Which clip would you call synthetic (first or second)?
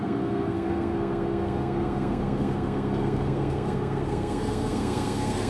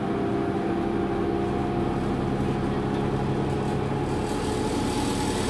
first